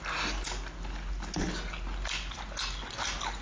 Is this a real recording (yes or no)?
yes